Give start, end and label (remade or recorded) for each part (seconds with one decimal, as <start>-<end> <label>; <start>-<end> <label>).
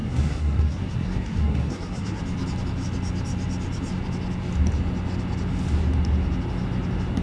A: 0.0-2.2 remade; 2.2-7.2 recorded